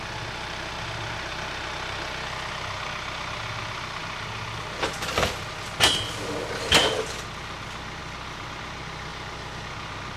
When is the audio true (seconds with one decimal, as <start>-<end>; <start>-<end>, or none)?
0.0-10.2